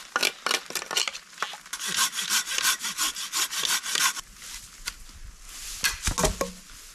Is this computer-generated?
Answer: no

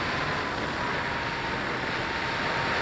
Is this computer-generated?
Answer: no